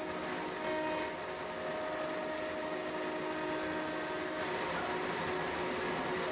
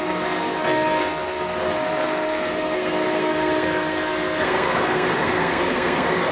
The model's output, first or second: second